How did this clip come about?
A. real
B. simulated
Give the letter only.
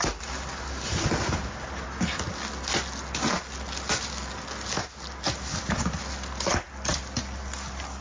A